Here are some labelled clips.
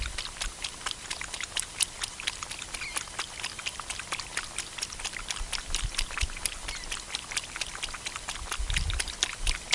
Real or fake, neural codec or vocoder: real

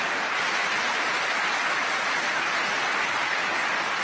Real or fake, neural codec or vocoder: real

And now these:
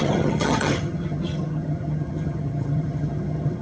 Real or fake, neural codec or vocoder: fake, vocoder, HiFi-GAN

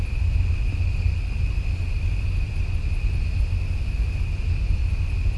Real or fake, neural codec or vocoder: real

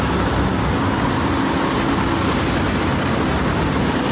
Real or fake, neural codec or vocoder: real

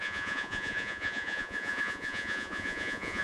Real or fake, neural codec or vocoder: fake, vocoder, Vocos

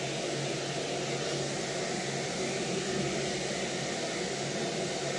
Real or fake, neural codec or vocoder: real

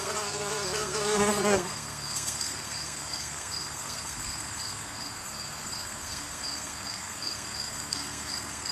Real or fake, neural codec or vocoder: fake, codec, SNAC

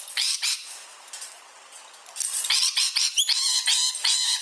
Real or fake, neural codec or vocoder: real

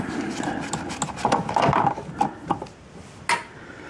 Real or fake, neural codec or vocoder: real